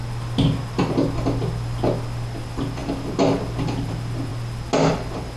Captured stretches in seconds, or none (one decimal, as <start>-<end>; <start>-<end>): 0.0-5.4